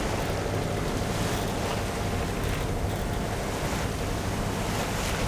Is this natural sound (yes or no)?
yes